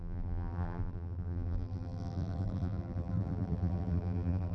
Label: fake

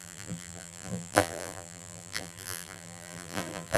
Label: fake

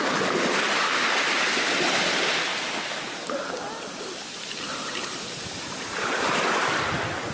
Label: real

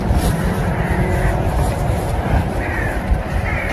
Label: fake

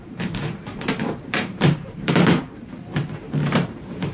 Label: fake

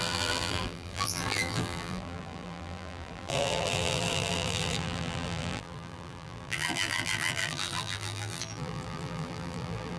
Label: fake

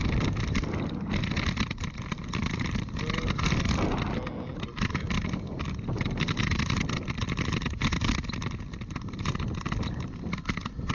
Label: real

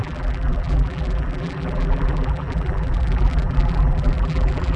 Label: fake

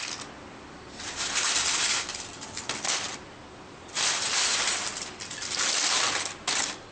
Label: real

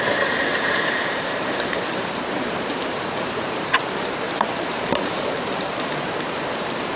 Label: fake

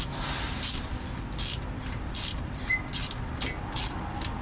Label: fake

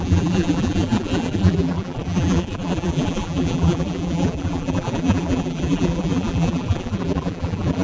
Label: fake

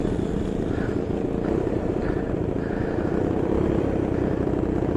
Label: fake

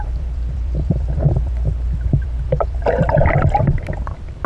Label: fake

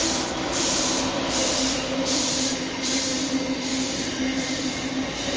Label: fake